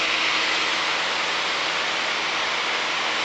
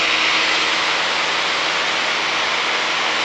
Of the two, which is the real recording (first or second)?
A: second